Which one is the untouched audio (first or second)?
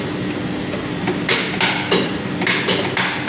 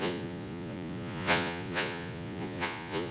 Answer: first